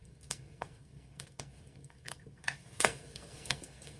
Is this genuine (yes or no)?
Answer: no